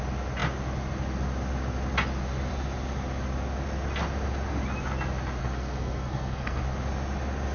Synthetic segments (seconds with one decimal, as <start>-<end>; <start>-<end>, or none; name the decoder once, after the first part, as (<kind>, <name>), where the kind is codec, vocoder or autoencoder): 5.4-6.6 (codec, SNAC)